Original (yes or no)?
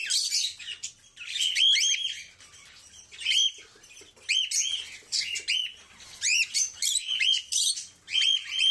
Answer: yes